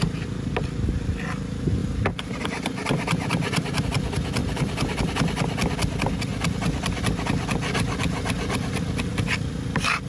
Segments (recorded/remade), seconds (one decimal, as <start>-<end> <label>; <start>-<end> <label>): 0.0-1.8 recorded; 1.8-3.8 remade; 3.8-4.4 recorded; 4.4-5.0 remade; 5.0-10.1 recorded